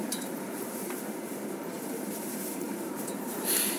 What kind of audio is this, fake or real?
fake